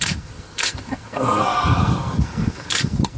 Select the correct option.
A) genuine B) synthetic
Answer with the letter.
B